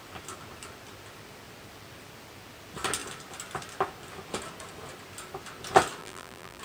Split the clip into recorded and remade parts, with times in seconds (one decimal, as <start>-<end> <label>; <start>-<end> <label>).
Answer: 0.0-6.0 recorded; 6.0-6.6 remade